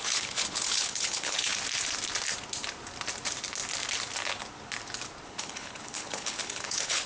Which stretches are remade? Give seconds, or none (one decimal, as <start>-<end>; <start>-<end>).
0.0-1.5; 5.3-7.1